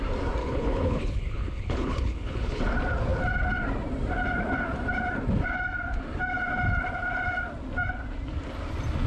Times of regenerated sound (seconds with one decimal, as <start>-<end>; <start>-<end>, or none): 0.4-2.6